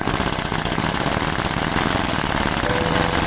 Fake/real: real